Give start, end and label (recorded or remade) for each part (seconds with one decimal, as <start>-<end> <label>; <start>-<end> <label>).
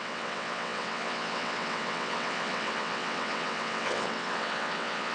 0.0-5.1 remade